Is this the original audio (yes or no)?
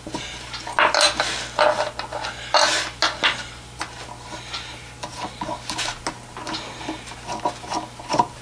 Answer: yes